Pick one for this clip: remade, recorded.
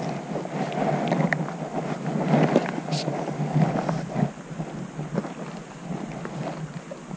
recorded